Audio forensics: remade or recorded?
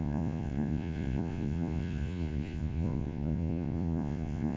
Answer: remade